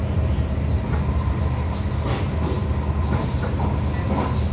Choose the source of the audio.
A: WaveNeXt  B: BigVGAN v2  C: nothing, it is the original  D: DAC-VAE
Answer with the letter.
C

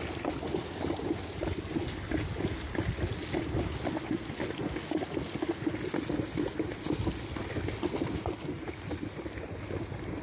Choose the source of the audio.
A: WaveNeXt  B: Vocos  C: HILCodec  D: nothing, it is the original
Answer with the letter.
D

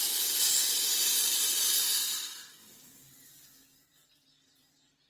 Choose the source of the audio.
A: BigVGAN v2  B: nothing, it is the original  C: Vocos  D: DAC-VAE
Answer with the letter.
B